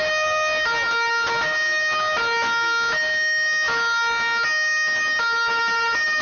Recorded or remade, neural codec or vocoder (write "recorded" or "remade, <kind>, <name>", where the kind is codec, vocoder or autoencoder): recorded